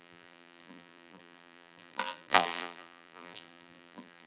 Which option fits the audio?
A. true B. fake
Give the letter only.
B